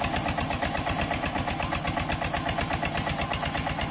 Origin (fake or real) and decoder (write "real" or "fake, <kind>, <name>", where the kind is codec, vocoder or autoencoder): real